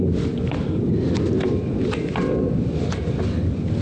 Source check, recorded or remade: recorded